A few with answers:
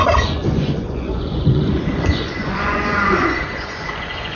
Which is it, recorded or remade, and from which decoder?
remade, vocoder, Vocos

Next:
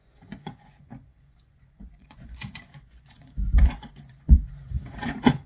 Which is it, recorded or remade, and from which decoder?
remade, vocoder, Vocos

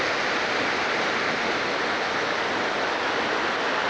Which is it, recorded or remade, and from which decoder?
recorded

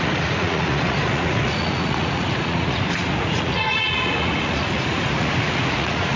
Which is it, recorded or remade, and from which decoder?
remade, vocoder, Vocos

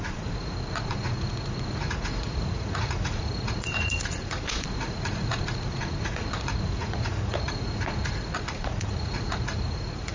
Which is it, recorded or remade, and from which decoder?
remade, vocoder, Vocos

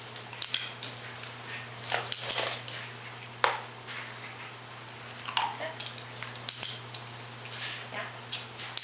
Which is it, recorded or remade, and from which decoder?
recorded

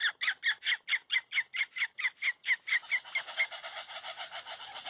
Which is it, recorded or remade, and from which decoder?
recorded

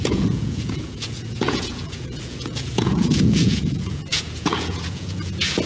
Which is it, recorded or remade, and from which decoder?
remade, vocoder, Vocos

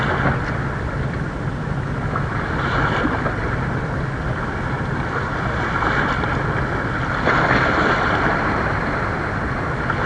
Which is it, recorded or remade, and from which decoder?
recorded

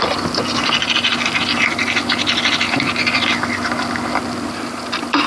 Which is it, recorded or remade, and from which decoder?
recorded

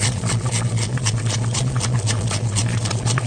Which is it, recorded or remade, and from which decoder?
remade, vocoder, Vocos